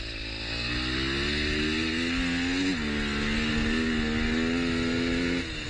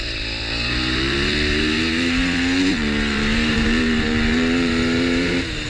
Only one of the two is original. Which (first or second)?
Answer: first